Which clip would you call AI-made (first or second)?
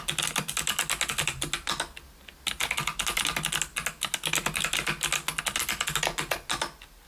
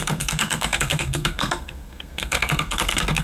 second